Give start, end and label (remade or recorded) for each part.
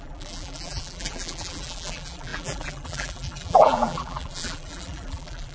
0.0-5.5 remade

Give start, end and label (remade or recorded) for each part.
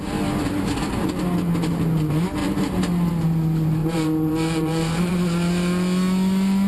0.0-2.4 recorded; 2.4-3.1 remade; 3.1-3.8 recorded; 3.8-5.1 remade; 5.1-6.7 recorded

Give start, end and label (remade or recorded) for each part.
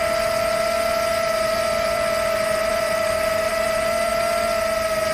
0.0-1.1 recorded; 1.1-4.1 remade; 4.1-5.1 recorded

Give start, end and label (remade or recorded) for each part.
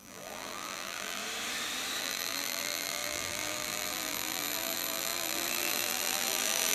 0.0-1.2 remade; 1.2-2.0 recorded; 2.0-6.7 remade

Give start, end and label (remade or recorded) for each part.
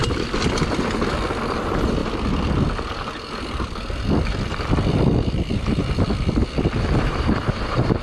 0.0-1.6 recorded; 1.6-2.0 remade; 2.0-6.8 recorded; 6.8-8.0 remade